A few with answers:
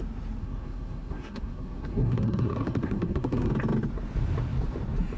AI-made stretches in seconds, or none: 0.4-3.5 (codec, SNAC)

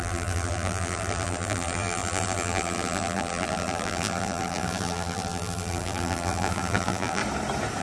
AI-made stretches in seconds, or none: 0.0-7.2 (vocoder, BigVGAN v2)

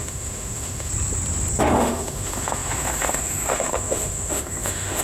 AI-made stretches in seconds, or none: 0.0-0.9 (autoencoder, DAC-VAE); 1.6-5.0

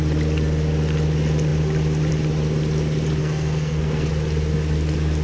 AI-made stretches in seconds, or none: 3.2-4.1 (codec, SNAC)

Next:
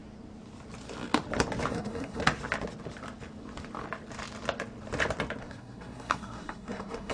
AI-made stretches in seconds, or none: 1.7-2.2 (codec, SNAC); 5.4-7.1